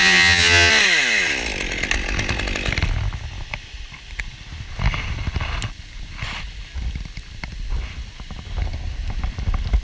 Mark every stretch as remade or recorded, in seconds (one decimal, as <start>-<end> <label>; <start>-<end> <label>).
0.0-0.7 remade; 0.7-9.8 recorded